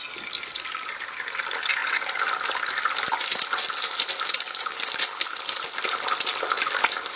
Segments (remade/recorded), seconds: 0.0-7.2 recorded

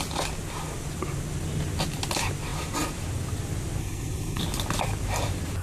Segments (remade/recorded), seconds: 0.0-3.8 recorded; 3.8-4.4 remade; 4.4-5.6 recorded

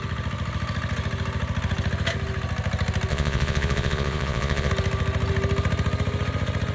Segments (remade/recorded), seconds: 0.0-3.1 recorded; 3.1-4.7 remade; 4.7-6.7 recorded

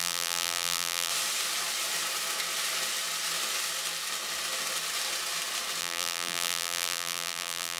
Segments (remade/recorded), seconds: 0.0-1.1 remade; 1.1-5.8 recorded; 5.8-7.8 remade

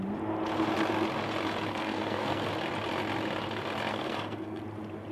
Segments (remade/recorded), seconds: 0.0-1.7 recorded; 1.7-2.5 remade; 2.5-3.9 recorded; 3.9-4.6 remade; 4.6-5.1 recorded

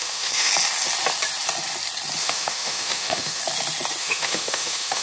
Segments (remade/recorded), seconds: 0.0-0.5 remade; 0.5-2.2 recorded; 2.2-3.4 remade; 3.4-4.0 recorded; 4.0-5.0 remade

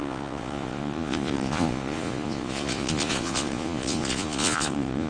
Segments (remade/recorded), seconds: 0.0-5.1 remade

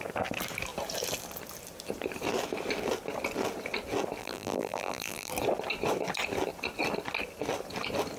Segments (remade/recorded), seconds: 0.0-4.2 recorded; 4.2-5.3 remade; 5.3-8.2 recorded